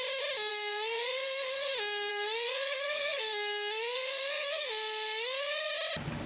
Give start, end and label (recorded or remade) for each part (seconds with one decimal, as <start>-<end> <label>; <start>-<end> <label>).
0.0-0.5 recorded; 0.5-1.7 remade; 1.7-2.1 recorded; 2.1-5.7 remade; 5.7-6.3 recorded